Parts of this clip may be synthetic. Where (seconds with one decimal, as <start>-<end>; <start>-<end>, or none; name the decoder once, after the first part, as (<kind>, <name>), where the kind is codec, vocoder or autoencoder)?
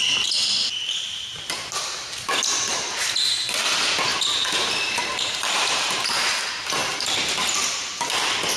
none